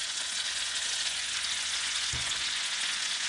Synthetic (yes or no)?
yes